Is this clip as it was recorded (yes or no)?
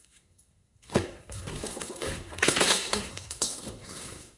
no